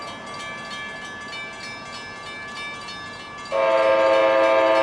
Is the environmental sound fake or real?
real